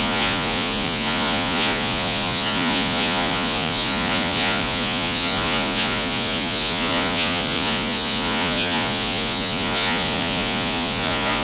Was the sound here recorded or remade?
remade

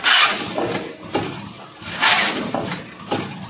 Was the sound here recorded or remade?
recorded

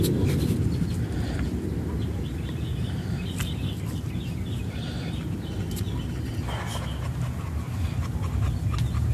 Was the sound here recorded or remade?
recorded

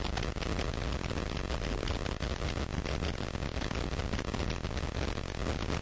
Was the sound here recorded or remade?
recorded